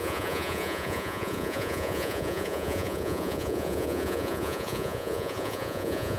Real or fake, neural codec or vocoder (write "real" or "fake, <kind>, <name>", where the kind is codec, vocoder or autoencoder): fake, vocoder, Vocos